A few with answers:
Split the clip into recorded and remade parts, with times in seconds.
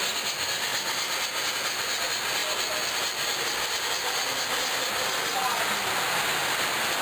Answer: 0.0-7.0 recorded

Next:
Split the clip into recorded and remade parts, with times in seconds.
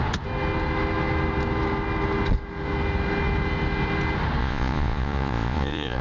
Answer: 0.0-4.4 recorded; 4.4-6.0 remade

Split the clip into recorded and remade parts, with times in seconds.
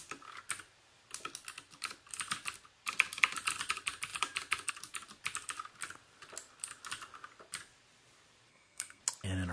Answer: 0.0-8.5 recorded; 8.5-9.0 remade; 9.0-9.5 recorded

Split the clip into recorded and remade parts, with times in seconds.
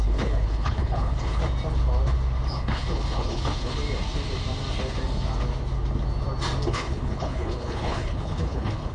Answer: 0.0-1.4 remade; 1.4-2.5 recorded; 2.5-3.8 remade; 3.8-6.7 recorded; 6.7-8.9 remade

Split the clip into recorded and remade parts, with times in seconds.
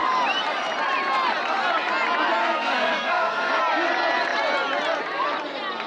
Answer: 0.0-2.4 recorded; 2.4-3.6 remade; 3.6-5.9 recorded